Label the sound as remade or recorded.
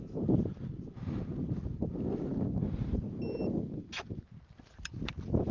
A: recorded